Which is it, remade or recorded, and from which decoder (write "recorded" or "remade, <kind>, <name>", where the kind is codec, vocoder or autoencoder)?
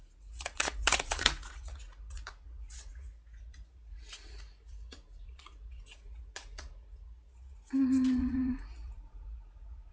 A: remade, vocoder, Vocos